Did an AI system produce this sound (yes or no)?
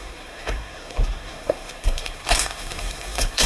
yes